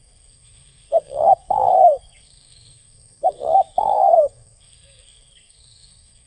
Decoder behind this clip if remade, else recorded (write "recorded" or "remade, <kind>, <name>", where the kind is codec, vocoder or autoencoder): remade, codec, SNAC